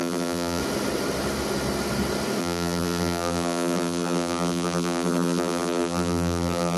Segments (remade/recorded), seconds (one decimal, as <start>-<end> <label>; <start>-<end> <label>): 0.0-0.6 remade; 0.6-2.4 recorded; 2.4-6.8 remade